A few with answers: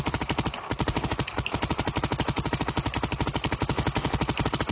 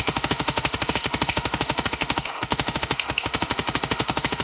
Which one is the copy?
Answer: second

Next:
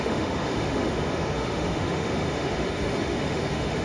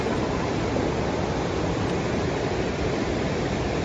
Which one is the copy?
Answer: first